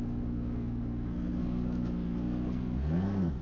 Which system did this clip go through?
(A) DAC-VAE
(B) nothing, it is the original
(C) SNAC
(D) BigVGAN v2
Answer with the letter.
C